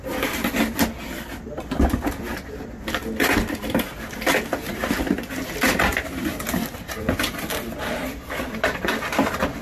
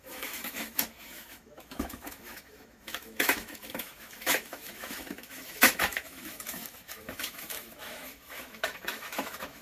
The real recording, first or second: first